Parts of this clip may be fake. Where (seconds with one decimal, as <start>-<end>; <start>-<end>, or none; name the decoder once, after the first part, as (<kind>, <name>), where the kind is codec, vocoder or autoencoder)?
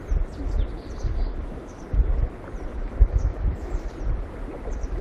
1.3-1.8 (autoencoder, DAC-VAE); 2.7-3.9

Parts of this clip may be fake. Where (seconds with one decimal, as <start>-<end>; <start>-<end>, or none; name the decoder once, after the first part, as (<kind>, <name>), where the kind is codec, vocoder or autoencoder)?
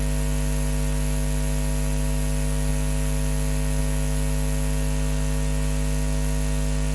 none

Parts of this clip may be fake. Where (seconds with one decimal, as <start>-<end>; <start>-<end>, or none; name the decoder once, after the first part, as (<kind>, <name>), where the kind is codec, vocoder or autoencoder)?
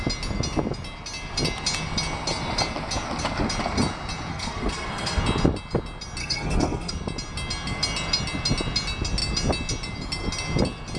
4.3-5.2 (codec, SNAC); 6.2-6.9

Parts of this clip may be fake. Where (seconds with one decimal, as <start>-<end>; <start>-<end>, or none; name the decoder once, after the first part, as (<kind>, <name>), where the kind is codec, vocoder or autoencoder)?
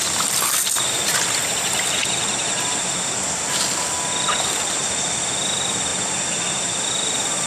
none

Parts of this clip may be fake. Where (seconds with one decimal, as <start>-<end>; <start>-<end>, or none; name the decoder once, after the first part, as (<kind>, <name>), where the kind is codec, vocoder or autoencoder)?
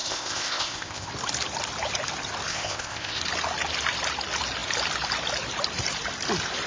0.0-1.1 (codec, ZipCodec); 2.5-3.2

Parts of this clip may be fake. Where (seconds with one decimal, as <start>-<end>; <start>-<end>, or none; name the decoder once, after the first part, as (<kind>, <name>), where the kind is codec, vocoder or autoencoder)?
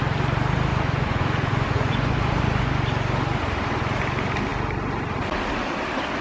0.7-2.7 (vocoder, Vocos)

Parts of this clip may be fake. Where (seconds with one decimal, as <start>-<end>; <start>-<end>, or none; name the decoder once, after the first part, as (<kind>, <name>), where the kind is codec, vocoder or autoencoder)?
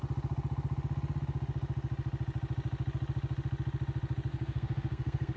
4.3-5.4 (codec, SNAC)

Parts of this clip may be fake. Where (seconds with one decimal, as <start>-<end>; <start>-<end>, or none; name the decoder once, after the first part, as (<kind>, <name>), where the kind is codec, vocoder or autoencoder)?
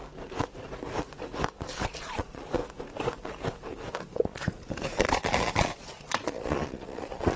2.0-2.6 (vocoder, Vocos); 4.9-7.4